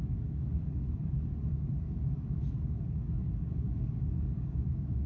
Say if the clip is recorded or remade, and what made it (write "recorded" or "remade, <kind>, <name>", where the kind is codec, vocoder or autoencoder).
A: remade, codec, DAC